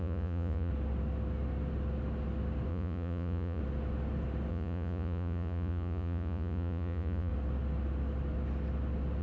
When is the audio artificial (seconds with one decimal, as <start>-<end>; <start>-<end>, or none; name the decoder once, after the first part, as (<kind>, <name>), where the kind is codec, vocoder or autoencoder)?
0.0-0.7 (vocoder, Vocos); 2.7-3.6; 4.5-7.3